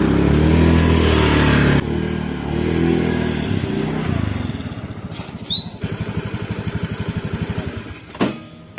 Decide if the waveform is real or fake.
real